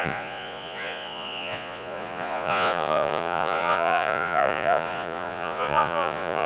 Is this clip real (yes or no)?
no